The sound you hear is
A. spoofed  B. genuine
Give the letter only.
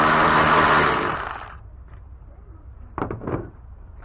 B